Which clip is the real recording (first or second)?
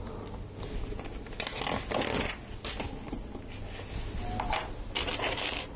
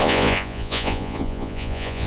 first